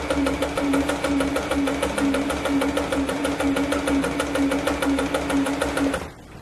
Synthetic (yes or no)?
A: no